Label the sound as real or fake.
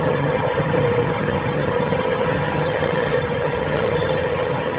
fake